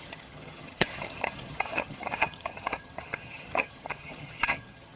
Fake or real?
fake